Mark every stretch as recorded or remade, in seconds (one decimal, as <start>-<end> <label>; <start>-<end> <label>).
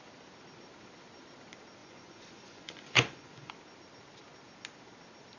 0.0-1.8 recorded; 1.8-3.5 remade; 3.5-5.4 recorded